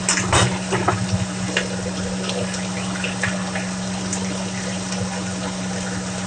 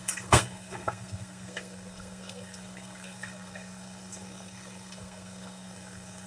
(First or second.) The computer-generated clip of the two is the second